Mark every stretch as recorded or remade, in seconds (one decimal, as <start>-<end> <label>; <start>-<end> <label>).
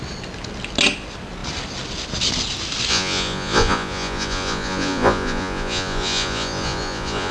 0.0-2.9 recorded; 2.9-7.3 remade